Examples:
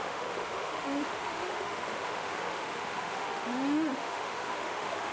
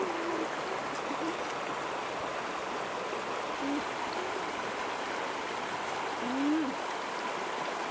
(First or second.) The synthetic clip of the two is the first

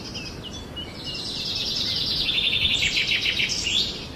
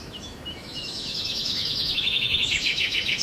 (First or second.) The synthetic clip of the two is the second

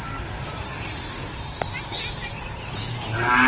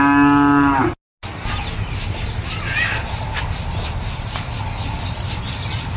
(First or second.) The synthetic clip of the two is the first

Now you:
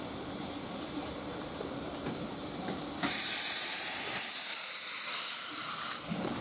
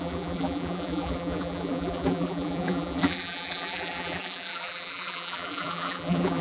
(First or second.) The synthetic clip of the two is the second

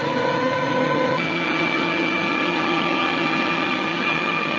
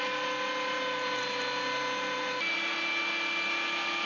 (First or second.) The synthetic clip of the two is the first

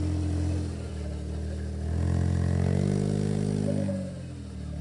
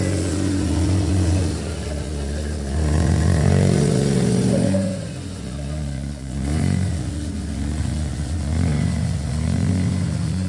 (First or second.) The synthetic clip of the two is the second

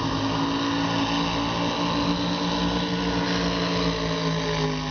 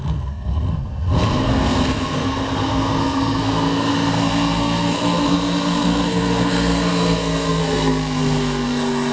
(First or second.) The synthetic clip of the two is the second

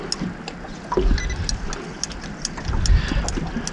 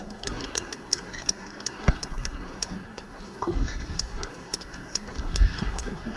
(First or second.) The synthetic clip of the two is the second